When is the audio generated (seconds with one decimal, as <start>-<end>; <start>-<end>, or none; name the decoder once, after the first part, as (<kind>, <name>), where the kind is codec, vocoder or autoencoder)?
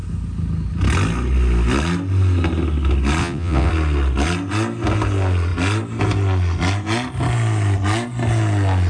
3.2-3.7 (vocoder, WaveNeXt)